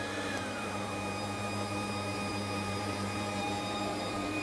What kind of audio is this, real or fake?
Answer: fake